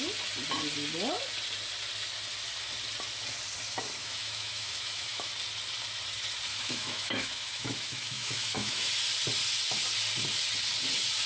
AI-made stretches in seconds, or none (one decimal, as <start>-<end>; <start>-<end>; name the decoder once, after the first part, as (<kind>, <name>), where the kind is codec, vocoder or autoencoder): 4.0-5.3 (autoencoder, DAC-VAE); 6.5-8.9